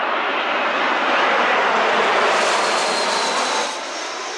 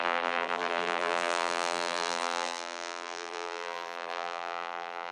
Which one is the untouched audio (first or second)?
first